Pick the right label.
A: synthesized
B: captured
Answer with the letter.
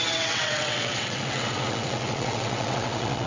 A